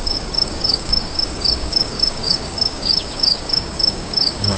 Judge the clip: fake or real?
fake